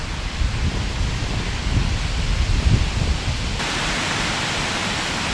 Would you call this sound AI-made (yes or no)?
no